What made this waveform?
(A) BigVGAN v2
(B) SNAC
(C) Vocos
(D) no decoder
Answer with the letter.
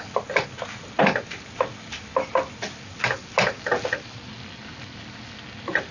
D